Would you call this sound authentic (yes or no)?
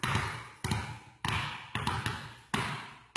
yes